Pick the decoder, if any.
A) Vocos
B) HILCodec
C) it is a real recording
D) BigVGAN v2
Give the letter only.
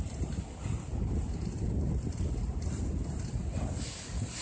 D